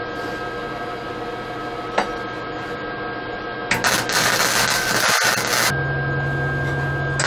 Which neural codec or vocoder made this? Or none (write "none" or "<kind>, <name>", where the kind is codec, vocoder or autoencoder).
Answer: none